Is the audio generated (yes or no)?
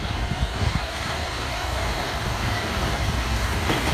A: yes